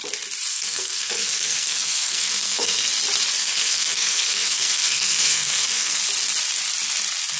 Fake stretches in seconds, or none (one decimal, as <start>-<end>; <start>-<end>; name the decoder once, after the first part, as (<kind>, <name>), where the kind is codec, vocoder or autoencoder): 0.5-2.9 (codec, SNAC); 3.4-6.0